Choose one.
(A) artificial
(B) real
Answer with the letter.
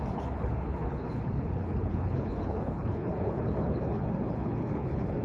A